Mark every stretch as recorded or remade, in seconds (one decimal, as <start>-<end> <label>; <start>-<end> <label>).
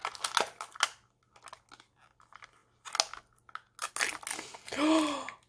0.0-5.5 recorded